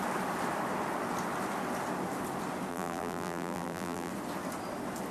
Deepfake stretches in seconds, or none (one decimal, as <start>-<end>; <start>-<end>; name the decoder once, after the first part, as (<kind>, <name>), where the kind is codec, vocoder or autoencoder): 2.7-4.1 (vocoder, BigVGAN v2)